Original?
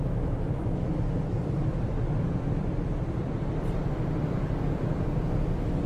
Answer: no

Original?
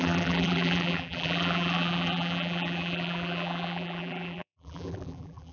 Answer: no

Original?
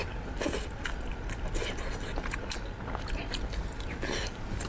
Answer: yes